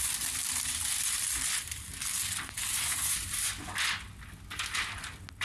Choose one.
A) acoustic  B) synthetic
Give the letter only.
A